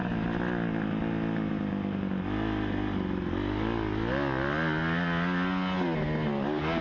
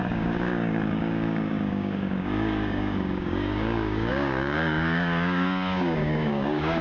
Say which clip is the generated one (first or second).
second